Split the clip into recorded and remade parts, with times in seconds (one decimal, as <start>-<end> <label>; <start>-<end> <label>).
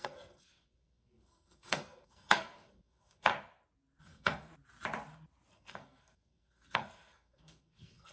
0.0-3.3 remade; 3.3-4.0 recorded; 4.0-4.5 remade; 4.5-5.5 recorded; 5.5-8.1 remade